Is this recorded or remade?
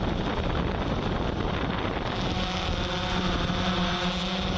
recorded